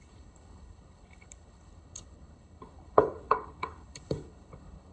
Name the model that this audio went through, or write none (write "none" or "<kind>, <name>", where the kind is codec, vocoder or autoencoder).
codec, HILCodec